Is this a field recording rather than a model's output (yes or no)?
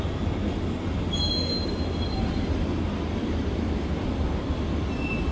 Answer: yes